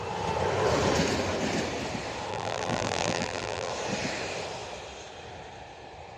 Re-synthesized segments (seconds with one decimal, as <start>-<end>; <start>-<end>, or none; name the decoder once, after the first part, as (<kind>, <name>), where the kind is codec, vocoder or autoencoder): 2.3-3.7 (vocoder, BigVGAN v2)